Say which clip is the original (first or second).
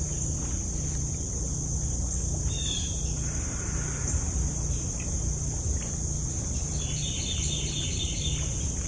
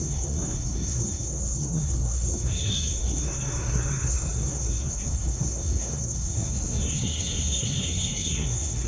first